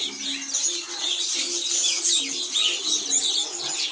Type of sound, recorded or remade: recorded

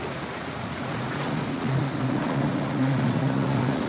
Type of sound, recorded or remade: remade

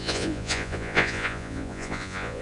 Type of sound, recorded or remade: remade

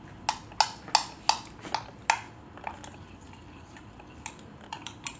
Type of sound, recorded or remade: recorded